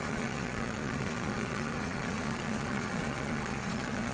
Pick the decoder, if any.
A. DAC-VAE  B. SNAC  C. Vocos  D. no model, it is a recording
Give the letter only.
C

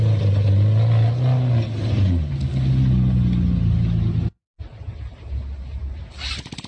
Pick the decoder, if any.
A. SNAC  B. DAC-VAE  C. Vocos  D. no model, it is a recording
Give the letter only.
D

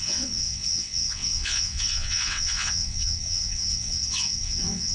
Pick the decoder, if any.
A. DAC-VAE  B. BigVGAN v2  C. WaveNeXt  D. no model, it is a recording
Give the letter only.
C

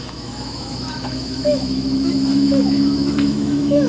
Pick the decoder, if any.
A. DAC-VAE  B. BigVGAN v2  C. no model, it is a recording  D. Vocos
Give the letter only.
A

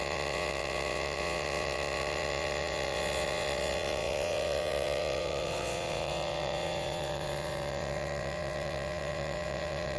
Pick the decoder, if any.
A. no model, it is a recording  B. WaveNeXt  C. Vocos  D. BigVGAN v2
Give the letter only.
B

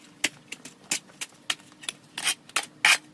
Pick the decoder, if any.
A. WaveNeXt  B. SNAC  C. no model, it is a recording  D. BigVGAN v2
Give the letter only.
C